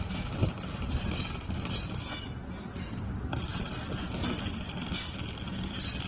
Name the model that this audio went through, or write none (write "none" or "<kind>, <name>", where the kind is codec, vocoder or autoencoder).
none